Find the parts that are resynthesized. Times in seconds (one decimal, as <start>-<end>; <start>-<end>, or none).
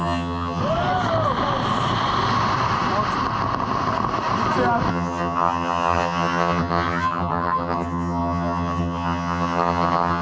0.0-0.6; 4.9-10.2